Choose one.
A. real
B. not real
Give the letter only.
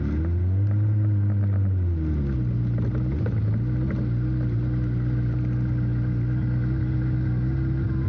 A